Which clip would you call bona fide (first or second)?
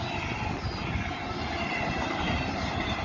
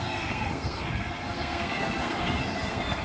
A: first